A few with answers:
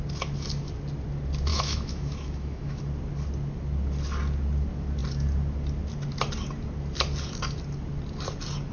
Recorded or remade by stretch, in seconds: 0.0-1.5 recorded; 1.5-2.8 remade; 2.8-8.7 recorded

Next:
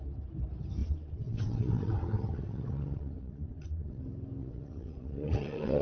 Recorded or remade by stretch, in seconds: 0.0-0.8 recorded; 0.8-4.0 remade; 4.0-4.4 recorded; 4.4-5.8 remade